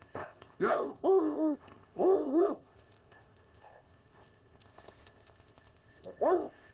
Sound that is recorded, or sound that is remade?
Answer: remade